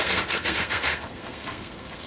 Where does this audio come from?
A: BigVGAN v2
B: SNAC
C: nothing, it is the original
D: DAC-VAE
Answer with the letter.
B